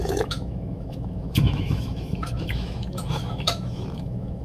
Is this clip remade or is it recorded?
remade